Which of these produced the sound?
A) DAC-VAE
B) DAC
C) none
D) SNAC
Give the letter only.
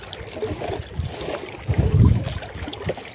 C